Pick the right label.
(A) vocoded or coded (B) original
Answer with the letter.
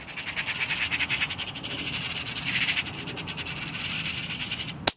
B